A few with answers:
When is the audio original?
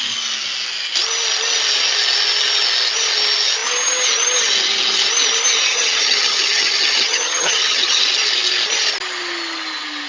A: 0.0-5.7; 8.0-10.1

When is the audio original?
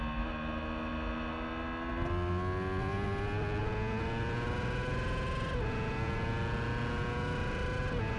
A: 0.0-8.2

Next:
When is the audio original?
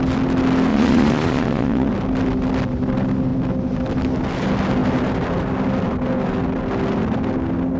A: 0.0-0.7; 1.9-7.8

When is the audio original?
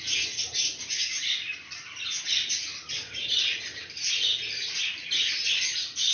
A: 0.0-6.1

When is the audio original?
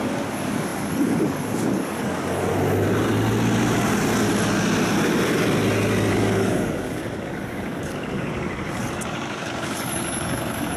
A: 2.5-6.1